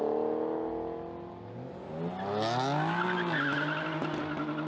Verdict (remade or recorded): recorded